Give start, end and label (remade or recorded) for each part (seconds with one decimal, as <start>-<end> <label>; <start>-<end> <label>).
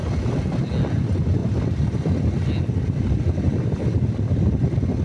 0.0-0.7 remade; 0.7-1.4 recorded; 1.4-4.4 remade; 4.4-5.0 recorded